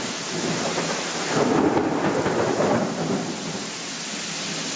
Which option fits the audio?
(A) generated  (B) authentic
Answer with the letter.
B